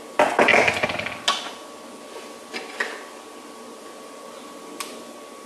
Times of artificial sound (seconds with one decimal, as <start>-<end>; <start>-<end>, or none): none